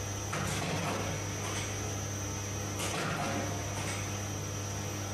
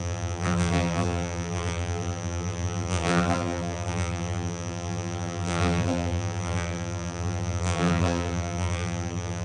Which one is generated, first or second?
second